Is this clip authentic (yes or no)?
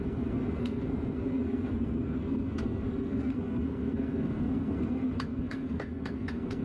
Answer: no